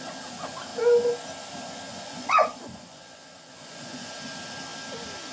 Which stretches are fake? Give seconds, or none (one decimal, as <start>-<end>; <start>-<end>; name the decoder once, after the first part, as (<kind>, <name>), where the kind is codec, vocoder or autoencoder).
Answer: 1.9-4.1 (vocoder, Vocos)